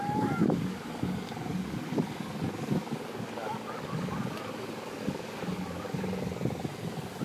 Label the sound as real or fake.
fake